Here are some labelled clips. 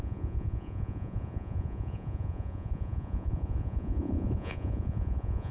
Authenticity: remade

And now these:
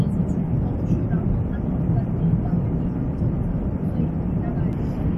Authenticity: recorded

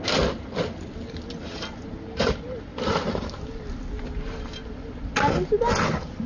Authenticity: recorded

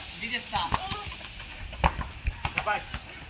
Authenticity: recorded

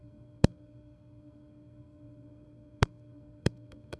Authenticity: remade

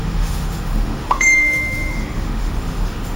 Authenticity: remade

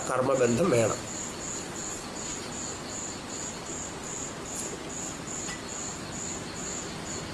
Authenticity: recorded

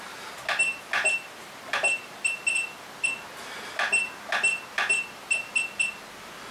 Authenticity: recorded